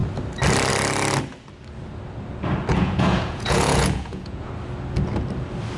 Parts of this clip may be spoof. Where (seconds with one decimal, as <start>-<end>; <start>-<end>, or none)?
2.7-4.5